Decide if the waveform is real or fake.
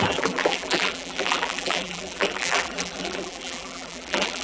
fake